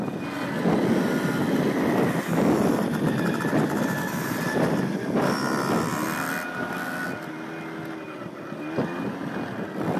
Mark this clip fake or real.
real